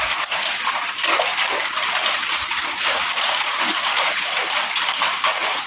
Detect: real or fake fake